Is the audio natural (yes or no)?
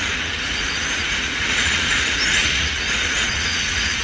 no